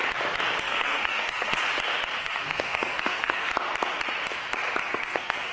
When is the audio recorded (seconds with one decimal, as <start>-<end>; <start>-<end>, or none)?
0.0-0.6; 1.6-2.2; 3.5-4.8